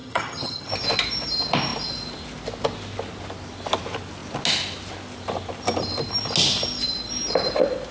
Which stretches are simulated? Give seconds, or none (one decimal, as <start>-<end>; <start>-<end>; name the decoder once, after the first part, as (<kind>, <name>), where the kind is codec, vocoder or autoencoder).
0.0-0.7 (vocoder, HiFi-GAN)

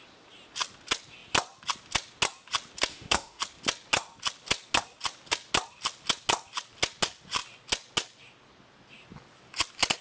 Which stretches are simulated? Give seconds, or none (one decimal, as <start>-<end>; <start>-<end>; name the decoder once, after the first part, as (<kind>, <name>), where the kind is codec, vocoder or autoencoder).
2.9-3.4 (autoencoder, DAC-VAE)

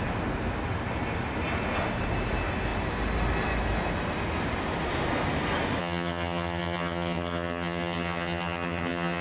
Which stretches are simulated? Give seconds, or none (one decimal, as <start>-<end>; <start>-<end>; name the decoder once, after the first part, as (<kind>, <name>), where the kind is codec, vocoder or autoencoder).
5.8-9.2 (vocoder, HiFi-GAN)